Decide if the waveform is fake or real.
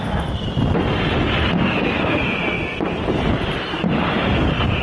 real